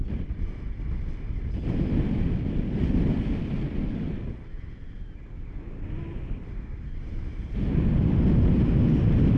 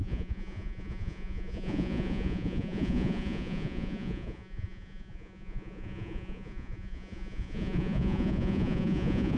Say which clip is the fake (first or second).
second